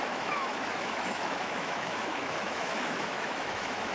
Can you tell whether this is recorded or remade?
remade